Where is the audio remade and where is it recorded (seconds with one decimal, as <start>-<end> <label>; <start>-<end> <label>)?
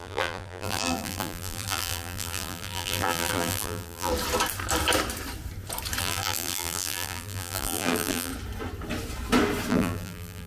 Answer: 0.0-4.1 remade; 4.1-6.0 recorded; 6.0-8.3 remade; 8.3-9.7 recorded; 9.7-10.5 remade